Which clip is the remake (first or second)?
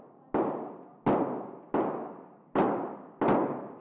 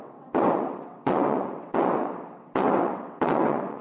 second